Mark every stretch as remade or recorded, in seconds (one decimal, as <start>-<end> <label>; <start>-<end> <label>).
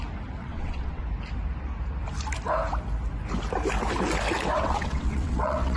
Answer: 0.0-0.4 recorded; 0.4-1.0 remade; 1.0-4.6 recorded; 4.6-5.8 remade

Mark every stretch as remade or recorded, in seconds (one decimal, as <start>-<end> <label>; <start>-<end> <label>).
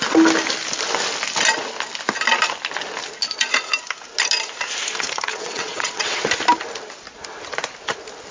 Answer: 0.0-5.3 recorded; 5.3-6.3 remade; 6.3-8.3 recorded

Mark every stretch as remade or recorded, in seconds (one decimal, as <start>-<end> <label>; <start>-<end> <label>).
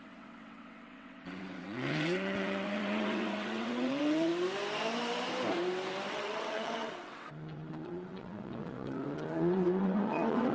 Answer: 0.0-4.3 remade; 4.3-6.1 recorded; 6.1-10.5 remade